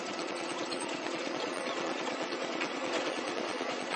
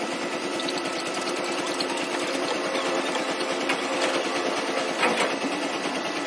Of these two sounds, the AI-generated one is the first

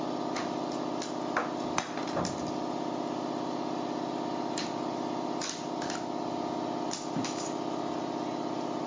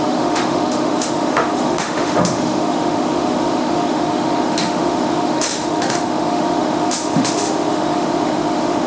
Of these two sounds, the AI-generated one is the second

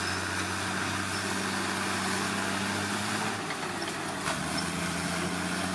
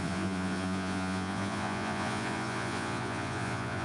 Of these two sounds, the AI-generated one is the second